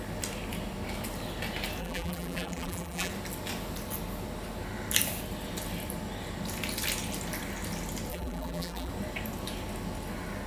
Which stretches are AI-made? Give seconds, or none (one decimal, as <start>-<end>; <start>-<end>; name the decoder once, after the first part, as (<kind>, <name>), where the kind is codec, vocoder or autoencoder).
1.8-3.1 (vocoder, BigVGAN v2); 8.1-8.9